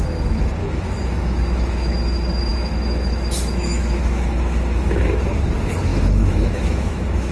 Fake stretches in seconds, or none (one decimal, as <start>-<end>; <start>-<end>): 0.6-1.9; 2.5-5.2; 5.9-7.3